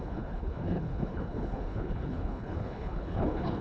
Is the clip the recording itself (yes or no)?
no